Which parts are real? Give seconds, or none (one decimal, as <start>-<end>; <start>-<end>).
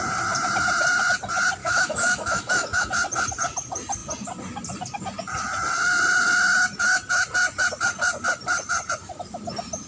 0.0-1.6; 2.9-9.9